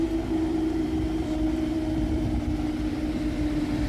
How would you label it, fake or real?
fake